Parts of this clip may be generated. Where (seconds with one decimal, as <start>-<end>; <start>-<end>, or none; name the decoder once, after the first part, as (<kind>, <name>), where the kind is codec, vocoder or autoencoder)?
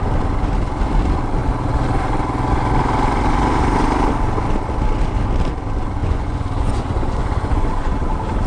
6.0-7.9 (vocoder, Vocos)